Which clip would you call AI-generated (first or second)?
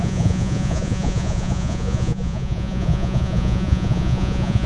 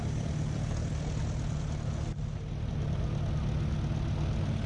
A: first